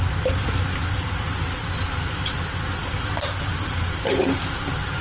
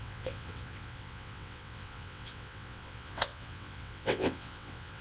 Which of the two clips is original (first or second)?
first